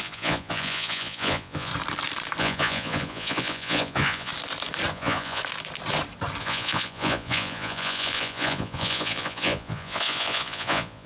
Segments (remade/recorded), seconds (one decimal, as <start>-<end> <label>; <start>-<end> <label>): 0.0-1.7 remade; 1.7-2.4 recorded; 2.4-4.3 remade; 4.3-4.9 recorded; 4.9-5.4 remade; 5.4-6.4 recorded; 6.4-11.1 remade